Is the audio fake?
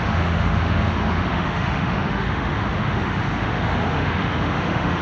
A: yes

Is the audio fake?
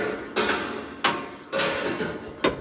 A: no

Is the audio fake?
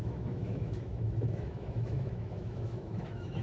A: yes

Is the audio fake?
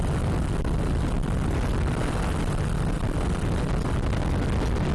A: no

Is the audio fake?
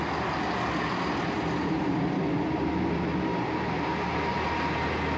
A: no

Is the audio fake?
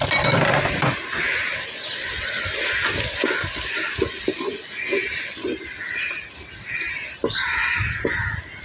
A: no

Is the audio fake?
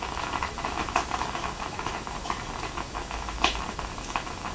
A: yes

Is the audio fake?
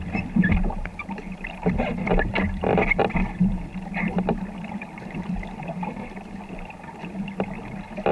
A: no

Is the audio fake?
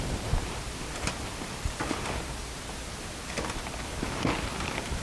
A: no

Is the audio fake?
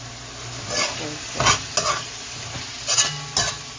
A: no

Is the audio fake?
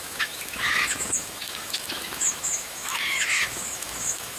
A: yes